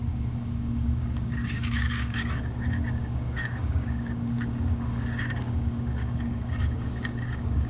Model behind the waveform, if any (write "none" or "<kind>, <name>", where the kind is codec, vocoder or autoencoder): codec, DAC